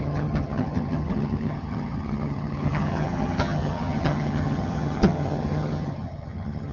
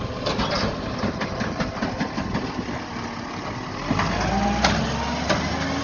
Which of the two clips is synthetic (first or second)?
first